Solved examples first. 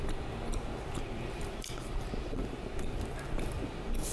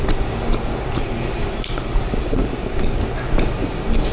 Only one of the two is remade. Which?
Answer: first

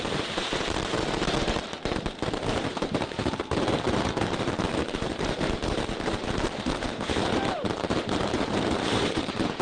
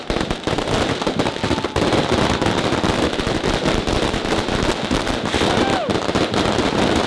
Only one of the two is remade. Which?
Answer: first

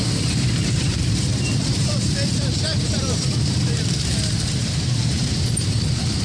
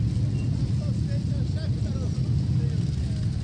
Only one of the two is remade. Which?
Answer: first